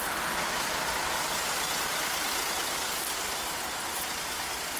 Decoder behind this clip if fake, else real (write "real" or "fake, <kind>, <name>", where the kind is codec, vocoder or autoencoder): real